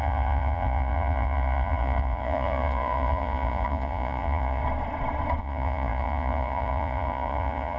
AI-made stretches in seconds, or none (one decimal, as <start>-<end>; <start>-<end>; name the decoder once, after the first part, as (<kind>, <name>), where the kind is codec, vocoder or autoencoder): 0.0-4.6 (vocoder, Vocos); 5.4-7.8